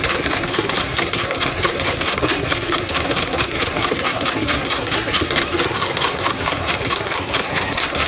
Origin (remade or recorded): remade